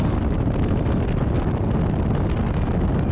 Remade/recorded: recorded